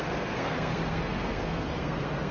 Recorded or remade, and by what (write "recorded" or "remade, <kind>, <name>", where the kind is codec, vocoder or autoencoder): remade, codec, SNAC